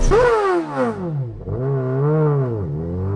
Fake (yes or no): no